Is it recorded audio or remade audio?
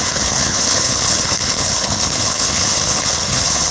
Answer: remade